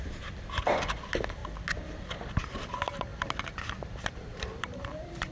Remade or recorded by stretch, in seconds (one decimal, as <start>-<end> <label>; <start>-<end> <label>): 0.0-1.4 remade; 1.4-2.2 recorded; 2.2-3.1 remade; 3.1-3.7 recorded; 3.7-5.3 remade